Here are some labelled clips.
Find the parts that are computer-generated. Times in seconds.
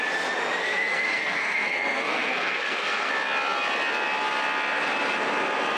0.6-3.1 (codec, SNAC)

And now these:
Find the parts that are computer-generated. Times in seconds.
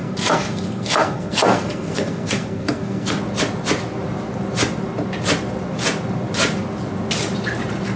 0.0-3.2 (codec, SNAC)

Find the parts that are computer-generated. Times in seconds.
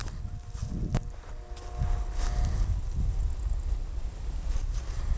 0.0-0.6 (vocoder, BigVGAN v2); 3.7-5.2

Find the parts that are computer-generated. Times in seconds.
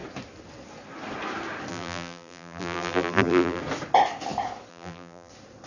1.7-3.6 (vocoder, BigVGAN v2); 4.7-5.3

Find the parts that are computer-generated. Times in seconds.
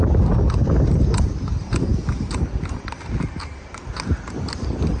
none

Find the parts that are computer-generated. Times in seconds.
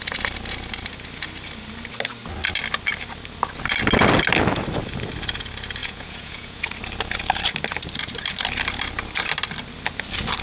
5.8-6.6 (vocoder, Vocos)